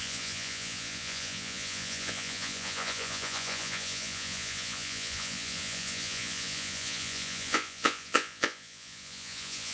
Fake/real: fake